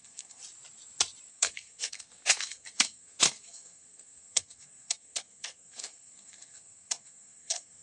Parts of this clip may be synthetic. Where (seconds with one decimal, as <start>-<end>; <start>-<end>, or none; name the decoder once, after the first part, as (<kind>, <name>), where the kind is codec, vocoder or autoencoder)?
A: 0.0-0.4 (codec, SNAC); 1.3-7.8

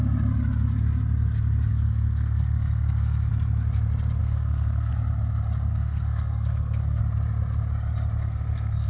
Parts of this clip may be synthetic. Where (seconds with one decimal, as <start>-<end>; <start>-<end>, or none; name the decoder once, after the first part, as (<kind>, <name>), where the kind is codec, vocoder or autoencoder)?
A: 1.7-3.3 (codec, SNAC); 4.2-4.9; 5.7-7.0; 8.2-8.9

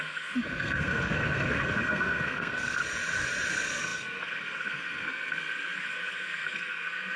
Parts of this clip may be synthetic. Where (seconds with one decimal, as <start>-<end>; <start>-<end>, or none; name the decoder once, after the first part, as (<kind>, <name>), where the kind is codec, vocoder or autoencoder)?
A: 0.0-2.8 (codec, SNAC); 3.5-7.2

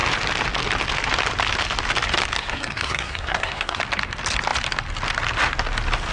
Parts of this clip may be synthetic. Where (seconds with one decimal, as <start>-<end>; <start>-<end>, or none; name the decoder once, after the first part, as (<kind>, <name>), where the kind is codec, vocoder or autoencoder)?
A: 2.4-3.8 (codec, SNAC)

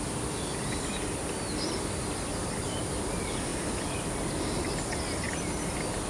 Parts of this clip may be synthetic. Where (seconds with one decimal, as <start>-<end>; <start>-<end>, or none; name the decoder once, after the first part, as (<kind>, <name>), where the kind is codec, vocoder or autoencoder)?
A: none

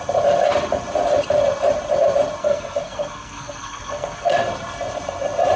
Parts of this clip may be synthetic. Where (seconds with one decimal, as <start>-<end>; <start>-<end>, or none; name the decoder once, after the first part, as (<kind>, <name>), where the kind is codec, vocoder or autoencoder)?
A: 2.4-4.4 (codec, SNAC)